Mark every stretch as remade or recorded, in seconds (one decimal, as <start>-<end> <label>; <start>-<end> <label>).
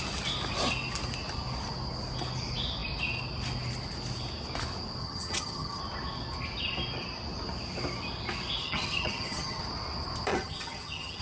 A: 0.0-5.0 recorded; 5.0-5.8 remade; 5.8-8.6 recorded; 8.6-9.6 remade; 9.6-10.3 recorded; 10.3-11.2 remade